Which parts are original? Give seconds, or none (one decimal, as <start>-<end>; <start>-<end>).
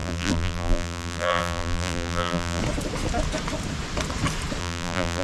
2.6-4.6